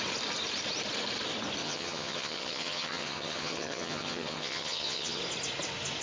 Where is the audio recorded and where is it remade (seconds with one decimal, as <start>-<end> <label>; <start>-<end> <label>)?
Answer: 0.0-1.6 recorded; 1.6-5.2 remade; 5.2-6.0 recorded